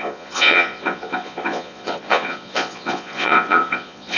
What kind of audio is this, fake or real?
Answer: fake